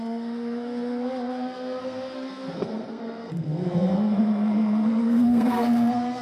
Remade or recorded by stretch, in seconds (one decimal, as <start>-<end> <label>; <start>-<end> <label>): 0.0-6.2 remade